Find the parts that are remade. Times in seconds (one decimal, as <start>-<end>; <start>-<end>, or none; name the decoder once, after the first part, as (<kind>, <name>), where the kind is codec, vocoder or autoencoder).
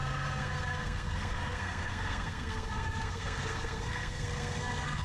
0.0-5.0 (codec, SNAC)